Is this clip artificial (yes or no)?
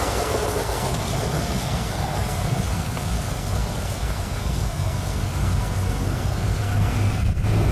yes